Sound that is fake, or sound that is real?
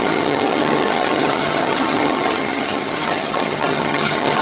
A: fake